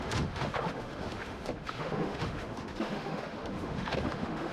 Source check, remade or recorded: remade